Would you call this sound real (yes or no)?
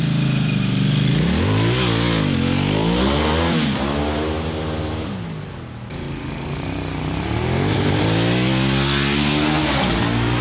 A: yes